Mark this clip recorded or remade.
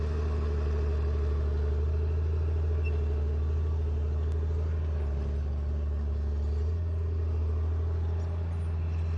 recorded